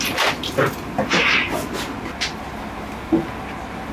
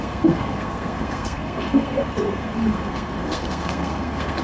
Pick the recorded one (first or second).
first